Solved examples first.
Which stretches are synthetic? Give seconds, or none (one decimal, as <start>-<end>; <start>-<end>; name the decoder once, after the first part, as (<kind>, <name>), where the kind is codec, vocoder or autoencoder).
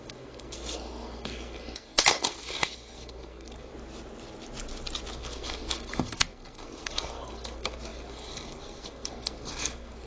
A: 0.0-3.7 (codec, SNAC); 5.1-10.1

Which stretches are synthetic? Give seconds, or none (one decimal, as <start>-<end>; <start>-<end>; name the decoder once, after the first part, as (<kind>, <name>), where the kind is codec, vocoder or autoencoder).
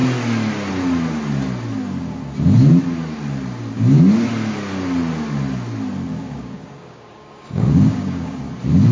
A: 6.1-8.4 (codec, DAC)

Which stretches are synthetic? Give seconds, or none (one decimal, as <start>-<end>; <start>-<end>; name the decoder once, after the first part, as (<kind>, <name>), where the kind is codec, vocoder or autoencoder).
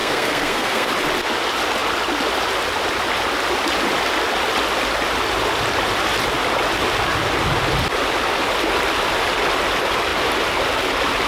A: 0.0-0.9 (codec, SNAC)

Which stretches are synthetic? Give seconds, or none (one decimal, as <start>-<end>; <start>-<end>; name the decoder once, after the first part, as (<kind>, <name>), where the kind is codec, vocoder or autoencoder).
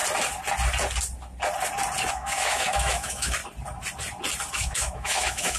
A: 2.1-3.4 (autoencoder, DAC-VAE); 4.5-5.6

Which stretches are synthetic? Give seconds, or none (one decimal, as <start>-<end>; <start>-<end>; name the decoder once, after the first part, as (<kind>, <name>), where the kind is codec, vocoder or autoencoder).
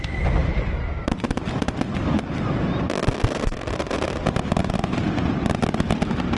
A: 0.4-1.4 (vocoder, BigVGAN v2)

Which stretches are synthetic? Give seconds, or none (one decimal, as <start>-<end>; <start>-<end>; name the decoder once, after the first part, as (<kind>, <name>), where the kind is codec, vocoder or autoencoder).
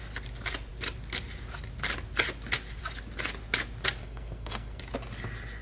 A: 4.0-4.8 (codec, SNAC)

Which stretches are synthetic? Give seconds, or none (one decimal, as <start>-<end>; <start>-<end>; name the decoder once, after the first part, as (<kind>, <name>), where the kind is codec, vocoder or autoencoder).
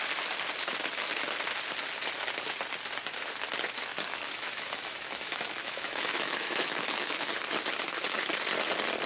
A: 3.9-7.3 (autoencoder, DAC-VAE)